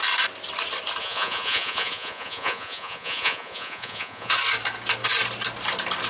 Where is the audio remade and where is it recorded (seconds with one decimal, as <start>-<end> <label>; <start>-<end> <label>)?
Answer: 0.0-1.0 recorded; 1.0-4.3 remade; 4.3-6.1 recorded